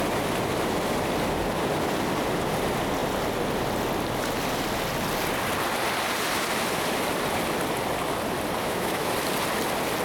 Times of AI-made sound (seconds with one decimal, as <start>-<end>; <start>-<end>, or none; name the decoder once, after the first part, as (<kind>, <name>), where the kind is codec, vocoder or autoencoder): 8.6-9.1 (autoencoder, DAC-VAE)